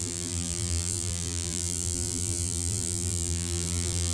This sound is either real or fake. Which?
fake